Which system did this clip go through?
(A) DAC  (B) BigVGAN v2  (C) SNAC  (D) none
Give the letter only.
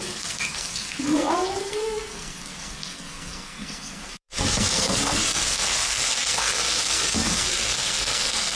C